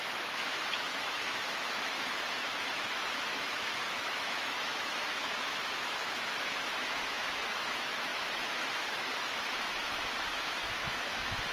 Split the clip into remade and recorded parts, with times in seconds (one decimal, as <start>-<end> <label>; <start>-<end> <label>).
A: 0.0-11.5 remade